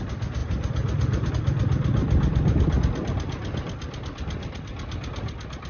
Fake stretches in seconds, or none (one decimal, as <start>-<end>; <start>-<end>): 0.4-1.3; 2.0-2.8; 3.4-4.7